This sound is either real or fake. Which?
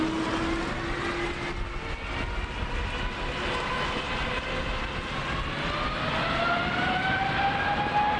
real